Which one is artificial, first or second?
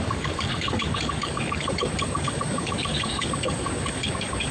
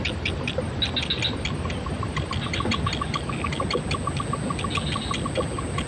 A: first